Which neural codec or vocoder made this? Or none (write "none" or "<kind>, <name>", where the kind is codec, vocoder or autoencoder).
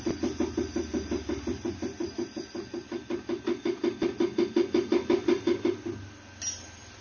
none